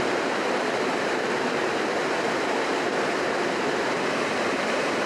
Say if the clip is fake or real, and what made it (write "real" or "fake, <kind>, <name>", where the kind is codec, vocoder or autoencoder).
real